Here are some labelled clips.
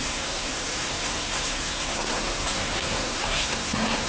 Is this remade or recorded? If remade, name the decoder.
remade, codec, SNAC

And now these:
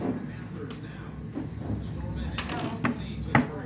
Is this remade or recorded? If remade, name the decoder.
recorded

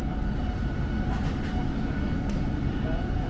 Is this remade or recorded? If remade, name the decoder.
recorded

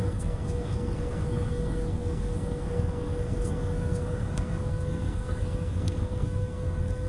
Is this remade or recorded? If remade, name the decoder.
remade, codec, SNAC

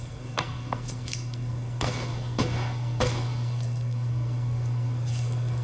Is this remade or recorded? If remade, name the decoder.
remade, codec, SNAC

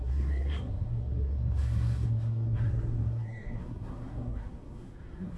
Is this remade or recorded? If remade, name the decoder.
remade, codec, SNAC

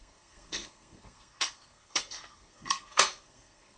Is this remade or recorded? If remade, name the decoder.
remade, codec, SNAC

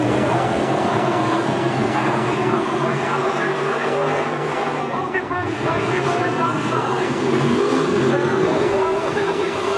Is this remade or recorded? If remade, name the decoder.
remade, codec, SNAC